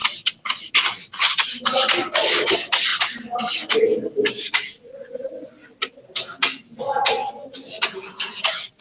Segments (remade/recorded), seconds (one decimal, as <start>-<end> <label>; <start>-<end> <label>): 0.0-8.8 recorded